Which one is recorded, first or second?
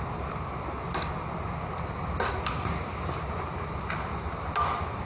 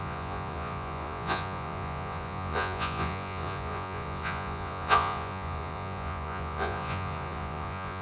first